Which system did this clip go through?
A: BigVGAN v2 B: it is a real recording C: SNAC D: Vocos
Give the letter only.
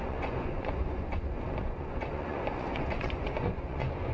D